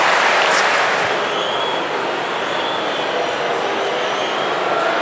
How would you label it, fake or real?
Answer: real